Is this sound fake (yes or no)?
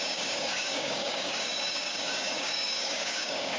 yes